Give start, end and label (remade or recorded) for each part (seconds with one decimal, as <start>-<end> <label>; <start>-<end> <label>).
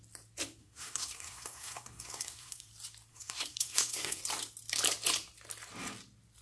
0.0-0.6 recorded; 0.6-2.7 remade; 2.7-3.1 recorded; 3.1-4.2 remade; 4.2-6.4 recorded